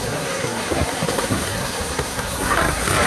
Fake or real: fake